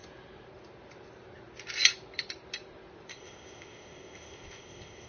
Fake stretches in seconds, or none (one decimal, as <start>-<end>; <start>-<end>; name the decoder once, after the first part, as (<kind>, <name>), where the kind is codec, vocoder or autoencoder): 3.1-5.1 (codec, ZipCodec)